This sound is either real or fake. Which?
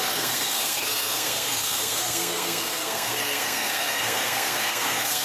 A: fake